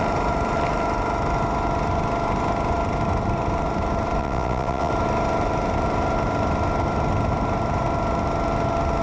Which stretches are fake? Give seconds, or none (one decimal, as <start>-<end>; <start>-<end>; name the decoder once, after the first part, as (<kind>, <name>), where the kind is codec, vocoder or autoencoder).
4.2-4.9 (vocoder, WaveNeXt)